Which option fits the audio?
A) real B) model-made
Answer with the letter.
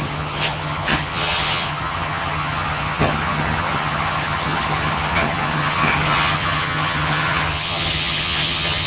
B